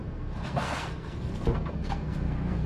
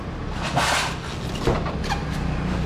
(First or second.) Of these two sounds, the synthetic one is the first